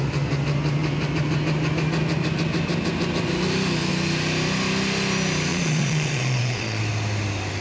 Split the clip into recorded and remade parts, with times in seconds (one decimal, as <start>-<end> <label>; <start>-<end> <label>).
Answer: 0.0-5.5 recorded; 5.5-6.8 remade; 6.8-7.6 recorded